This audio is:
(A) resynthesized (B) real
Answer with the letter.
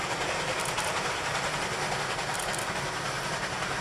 B